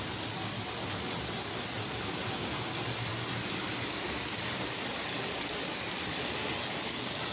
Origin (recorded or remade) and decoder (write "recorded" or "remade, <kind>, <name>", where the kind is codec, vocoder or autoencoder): recorded